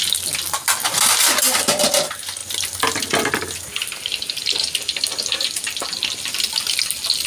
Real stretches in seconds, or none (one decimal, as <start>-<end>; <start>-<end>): 0.0-7.3